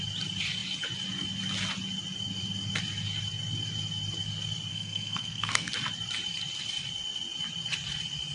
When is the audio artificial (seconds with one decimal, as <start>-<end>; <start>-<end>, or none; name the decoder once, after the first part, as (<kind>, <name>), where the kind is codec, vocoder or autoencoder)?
4.7-5.7 (codec, SNAC)